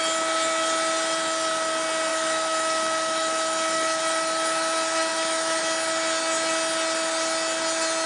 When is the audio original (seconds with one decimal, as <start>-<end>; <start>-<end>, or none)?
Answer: 0.0-2.1; 4.0-5.1; 5.6-8.1